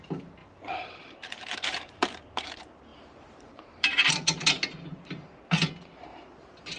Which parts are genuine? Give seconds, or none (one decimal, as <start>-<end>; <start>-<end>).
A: 0.0-0.4; 2.0-2.9; 4.1-6.1